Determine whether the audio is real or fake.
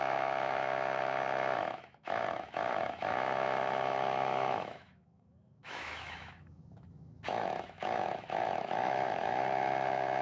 fake